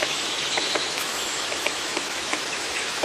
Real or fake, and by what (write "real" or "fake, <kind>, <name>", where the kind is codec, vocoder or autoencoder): fake, autoencoder, DAC-VAE